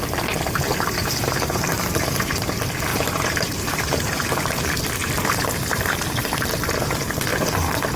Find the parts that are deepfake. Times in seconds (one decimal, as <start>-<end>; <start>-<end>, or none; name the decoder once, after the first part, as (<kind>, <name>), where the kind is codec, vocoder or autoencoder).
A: 1.0-1.7 (vocoder, BigVGAN v2); 2.9-4.6